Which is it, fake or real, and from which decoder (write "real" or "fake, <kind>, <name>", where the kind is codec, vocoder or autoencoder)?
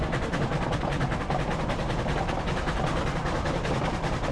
real